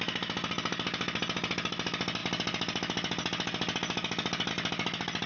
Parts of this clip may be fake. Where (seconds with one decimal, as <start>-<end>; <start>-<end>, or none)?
none